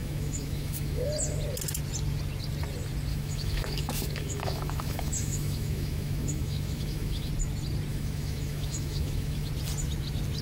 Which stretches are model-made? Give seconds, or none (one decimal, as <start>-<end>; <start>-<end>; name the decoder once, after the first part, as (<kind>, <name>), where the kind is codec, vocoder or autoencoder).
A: 0.0-1.1 (autoencoder, DAC-VAE); 3.1-7.3; 7.9-9.5

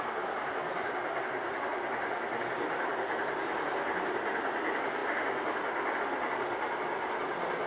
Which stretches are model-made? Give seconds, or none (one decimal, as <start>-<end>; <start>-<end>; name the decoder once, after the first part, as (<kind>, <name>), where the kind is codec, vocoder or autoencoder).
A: none